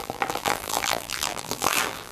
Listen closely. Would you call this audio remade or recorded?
remade